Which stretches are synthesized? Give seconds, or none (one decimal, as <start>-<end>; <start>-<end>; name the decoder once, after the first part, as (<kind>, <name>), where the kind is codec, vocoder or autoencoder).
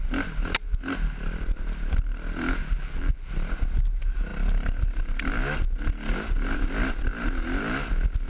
2.6-3.3 (vocoder, BigVGAN v2)